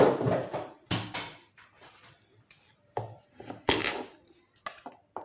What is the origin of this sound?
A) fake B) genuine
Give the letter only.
B